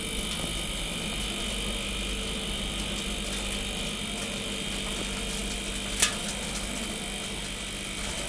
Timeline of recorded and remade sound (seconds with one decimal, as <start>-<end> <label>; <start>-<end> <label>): 0.0-8.3 recorded